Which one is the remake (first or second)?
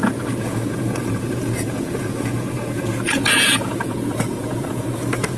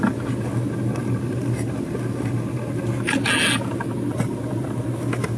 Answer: first